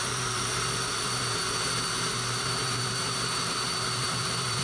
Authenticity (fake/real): fake